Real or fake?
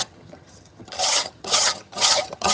fake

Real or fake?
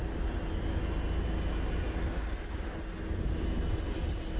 real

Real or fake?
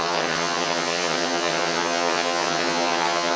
fake